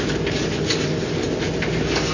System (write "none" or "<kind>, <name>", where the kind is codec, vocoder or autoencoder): none